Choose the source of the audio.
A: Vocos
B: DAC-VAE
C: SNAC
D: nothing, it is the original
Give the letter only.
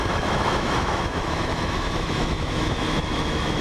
B